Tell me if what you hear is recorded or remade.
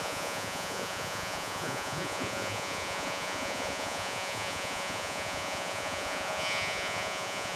remade